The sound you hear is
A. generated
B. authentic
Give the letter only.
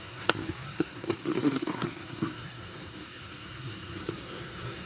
A